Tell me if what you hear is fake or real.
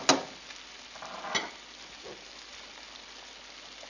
real